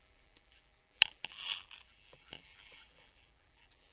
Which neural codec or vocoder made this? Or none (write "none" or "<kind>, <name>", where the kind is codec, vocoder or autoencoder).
vocoder, BigVGAN v2